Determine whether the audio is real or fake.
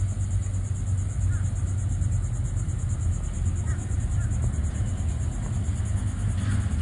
real